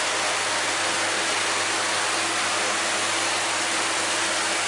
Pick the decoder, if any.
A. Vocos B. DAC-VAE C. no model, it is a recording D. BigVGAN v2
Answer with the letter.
C